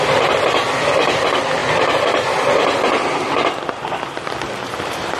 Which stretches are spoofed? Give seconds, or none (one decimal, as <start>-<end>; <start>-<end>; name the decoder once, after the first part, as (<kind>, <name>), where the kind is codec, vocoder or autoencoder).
none

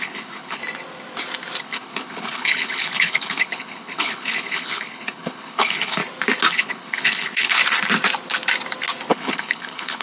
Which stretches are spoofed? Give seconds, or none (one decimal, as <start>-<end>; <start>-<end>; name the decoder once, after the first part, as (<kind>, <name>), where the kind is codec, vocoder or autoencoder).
0.0-0.6 (codec, HILCodec); 1.6-6.0; 6.5-7.6; 9.1-10.0